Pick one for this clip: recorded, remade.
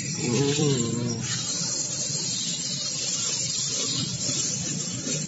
remade